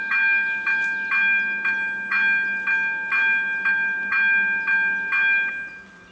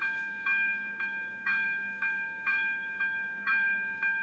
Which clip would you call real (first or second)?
first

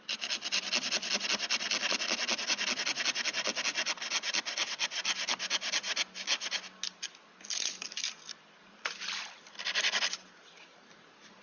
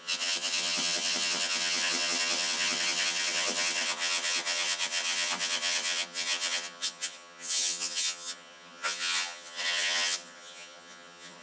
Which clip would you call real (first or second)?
first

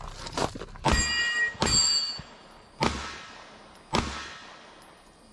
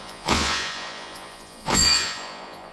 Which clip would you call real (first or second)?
first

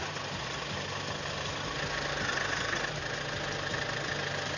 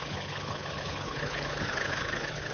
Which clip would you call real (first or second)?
first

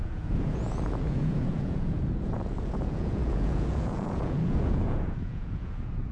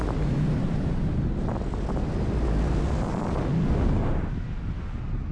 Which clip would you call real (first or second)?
second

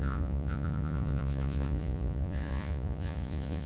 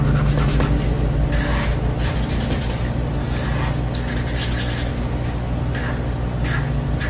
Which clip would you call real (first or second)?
second